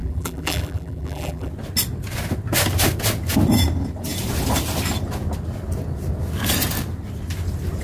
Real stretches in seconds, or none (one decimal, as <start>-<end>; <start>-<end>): 1.5-7.8